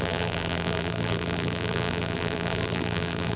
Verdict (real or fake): fake